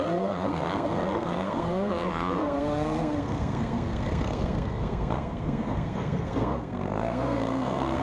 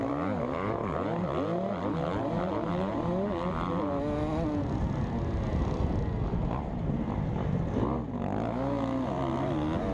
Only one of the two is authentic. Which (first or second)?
second